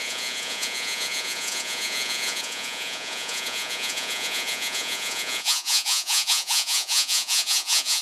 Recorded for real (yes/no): no